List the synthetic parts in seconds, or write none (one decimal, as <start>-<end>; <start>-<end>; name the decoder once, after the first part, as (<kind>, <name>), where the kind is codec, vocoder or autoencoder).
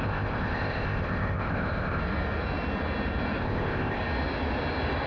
0.0-2.0 (codec, ZipCodec); 3.4-4.0